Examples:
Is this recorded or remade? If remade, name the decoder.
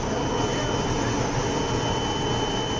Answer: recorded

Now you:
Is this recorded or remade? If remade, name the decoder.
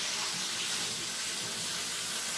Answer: recorded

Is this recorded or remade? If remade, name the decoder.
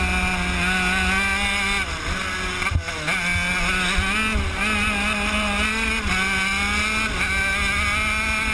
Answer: recorded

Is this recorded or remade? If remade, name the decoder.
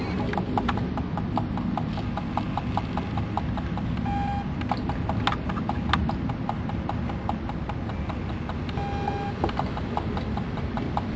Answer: recorded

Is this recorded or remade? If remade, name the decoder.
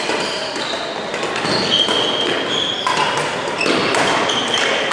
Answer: recorded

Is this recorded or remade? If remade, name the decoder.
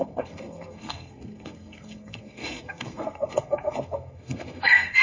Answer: remade, codec, SNAC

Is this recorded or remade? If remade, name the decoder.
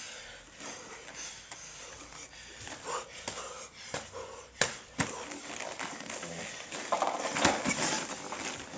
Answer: recorded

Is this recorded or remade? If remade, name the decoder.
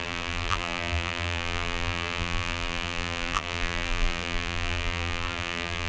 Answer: remade, vocoder, BigVGAN v2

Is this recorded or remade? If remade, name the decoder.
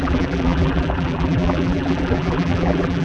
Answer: remade, vocoder, BigVGAN v2